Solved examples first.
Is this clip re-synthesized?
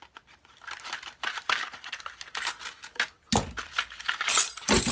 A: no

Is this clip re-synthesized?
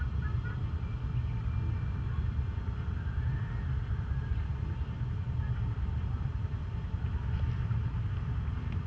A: no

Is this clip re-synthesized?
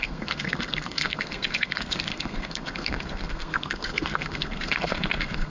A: yes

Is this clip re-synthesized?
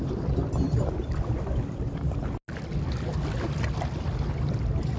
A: no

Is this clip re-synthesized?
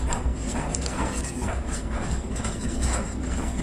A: yes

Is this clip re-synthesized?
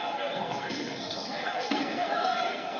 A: yes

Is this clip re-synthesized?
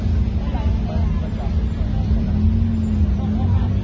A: no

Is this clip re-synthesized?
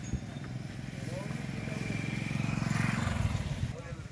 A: no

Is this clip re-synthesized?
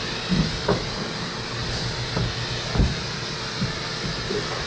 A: no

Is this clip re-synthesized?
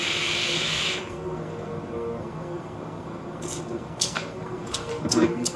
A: yes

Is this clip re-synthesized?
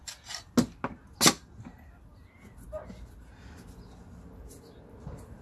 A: no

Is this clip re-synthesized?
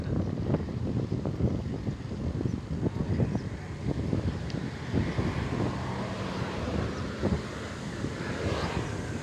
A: no